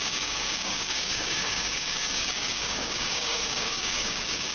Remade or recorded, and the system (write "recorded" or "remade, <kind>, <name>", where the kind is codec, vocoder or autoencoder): remade, codec, DAC